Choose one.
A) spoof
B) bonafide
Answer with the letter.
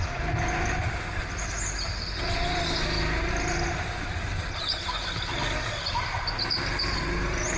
B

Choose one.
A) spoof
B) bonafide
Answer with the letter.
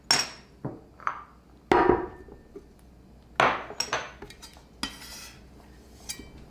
B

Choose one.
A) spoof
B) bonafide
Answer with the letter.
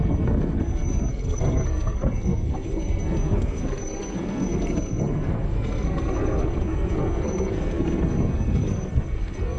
A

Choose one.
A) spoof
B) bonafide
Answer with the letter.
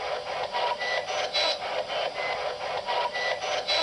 B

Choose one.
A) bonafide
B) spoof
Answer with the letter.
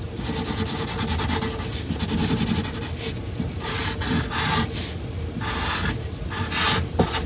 A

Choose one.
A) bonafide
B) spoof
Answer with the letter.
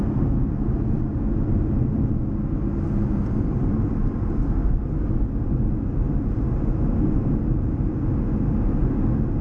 A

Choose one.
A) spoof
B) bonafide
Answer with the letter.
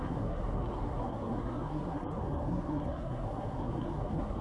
A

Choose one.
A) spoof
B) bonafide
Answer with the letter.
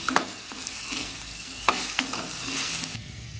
A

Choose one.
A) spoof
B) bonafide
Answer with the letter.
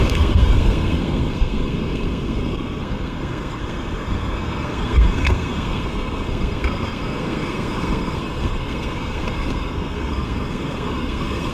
A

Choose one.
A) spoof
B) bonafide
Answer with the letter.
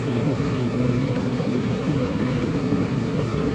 A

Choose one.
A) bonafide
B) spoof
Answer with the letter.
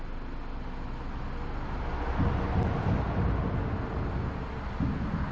A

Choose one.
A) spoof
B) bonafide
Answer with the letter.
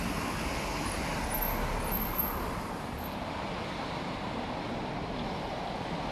B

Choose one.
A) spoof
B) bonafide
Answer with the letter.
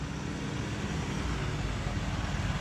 B